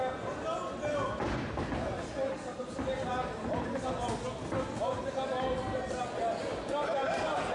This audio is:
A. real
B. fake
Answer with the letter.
A